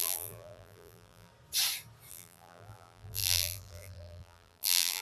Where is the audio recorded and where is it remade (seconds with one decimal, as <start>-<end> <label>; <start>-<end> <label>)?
0.0-1.3 remade; 1.3-2.1 recorded; 2.1-5.0 remade